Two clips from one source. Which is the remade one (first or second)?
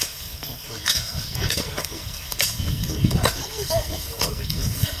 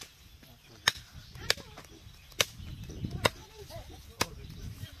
first